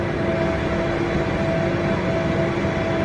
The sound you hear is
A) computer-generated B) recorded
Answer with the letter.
B